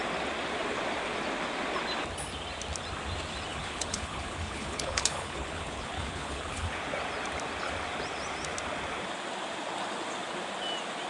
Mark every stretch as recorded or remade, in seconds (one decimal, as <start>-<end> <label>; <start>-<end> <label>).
0.0-3.5 recorded; 3.5-6.8 remade; 6.8-11.1 recorded